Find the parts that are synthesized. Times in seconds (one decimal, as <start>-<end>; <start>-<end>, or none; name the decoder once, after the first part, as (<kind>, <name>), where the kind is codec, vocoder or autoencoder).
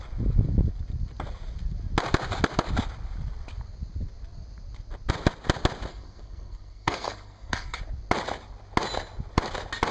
5.9-7.8 (codec, SNAC)